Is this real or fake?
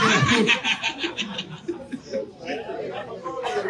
fake